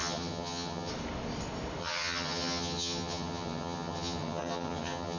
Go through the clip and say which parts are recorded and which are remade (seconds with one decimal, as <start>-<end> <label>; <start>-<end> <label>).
0.0-0.9 remade; 0.9-1.8 recorded; 1.8-5.2 remade